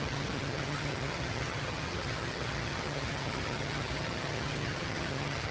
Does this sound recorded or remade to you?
remade